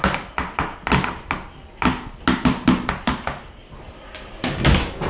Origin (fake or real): real